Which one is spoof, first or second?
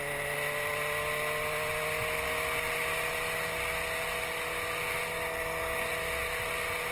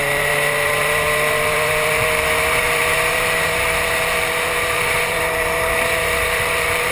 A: second